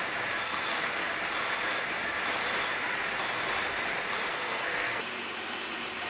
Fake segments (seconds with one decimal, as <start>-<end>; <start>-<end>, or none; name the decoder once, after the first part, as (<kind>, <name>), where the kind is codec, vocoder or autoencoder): 0.4-1.1 (codec, SNAC); 4.3-5.0